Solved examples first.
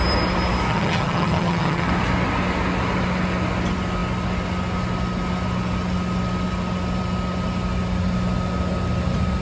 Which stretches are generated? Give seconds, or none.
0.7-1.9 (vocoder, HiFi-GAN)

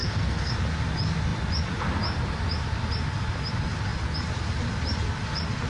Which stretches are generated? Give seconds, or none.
0.0-0.5 (codec, SNAC)

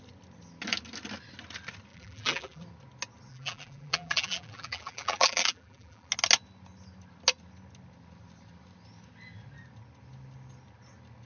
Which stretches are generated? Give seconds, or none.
1.9-2.6 (vocoder, BigVGAN v2); 3.3-6.1

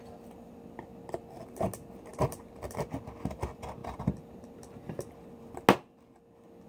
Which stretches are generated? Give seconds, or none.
2.1-2.8 (vocoder, BigVGAN v2); 3.8-4.9